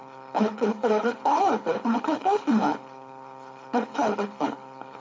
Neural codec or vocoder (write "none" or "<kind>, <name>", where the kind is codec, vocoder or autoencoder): codec, HILCodec